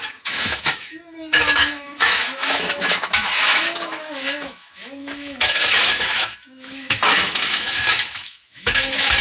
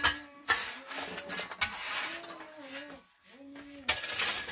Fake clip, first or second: first